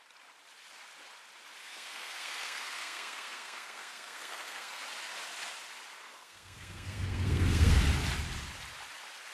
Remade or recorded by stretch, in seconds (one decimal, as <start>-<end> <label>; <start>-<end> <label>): 0.0-1.6 recorded; 1.6-4.8 remade; 4.8-6.0 recorded; 6.0-7.8 remade; 7.8-9.3 recorded